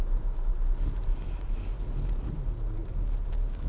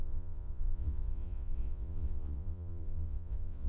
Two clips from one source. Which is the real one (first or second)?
first